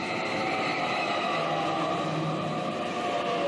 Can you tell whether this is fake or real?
real